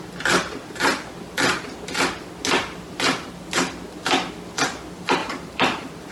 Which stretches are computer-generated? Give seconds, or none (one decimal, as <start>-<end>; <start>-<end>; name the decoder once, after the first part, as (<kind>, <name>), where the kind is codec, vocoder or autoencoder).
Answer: 5.2-6.1 (vocoder, BigVGAN v2)